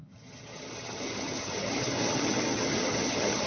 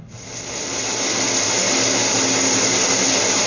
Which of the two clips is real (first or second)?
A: second